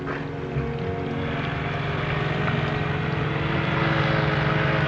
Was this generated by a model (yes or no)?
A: no